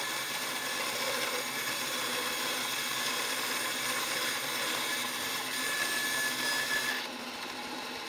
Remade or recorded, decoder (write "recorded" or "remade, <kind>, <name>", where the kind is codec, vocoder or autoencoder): recorded